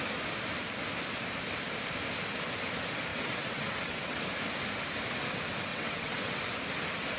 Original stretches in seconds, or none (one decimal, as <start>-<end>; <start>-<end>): 0.0-3.1; 4.2-5.7; 6.4-7.2